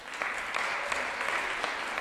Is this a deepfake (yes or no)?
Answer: no